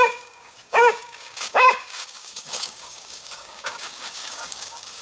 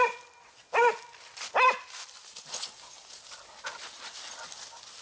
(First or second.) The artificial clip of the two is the first